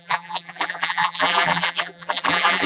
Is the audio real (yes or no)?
no